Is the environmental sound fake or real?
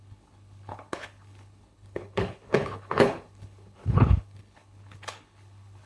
fake